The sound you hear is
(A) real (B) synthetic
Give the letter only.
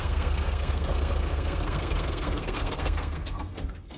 B